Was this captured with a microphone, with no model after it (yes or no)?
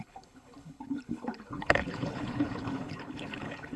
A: no